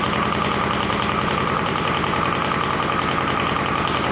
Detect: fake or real real